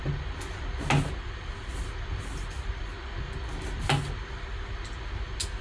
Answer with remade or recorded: recorded